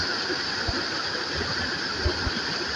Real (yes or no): yes